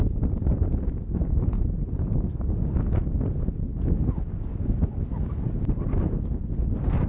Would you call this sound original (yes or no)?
yes